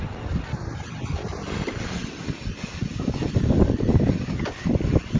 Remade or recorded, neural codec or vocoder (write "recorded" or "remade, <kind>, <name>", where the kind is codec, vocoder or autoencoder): recorded